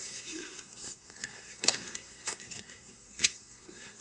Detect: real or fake fake